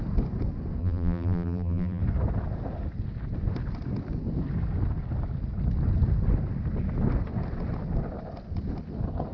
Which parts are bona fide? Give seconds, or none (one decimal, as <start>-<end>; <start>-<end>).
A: 0.0-0.8; 2.0-9.3